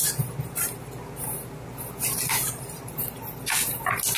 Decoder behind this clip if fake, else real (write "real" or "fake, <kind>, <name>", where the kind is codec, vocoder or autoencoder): real